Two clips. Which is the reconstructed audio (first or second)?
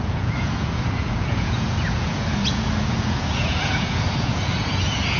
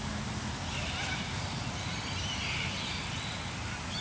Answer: first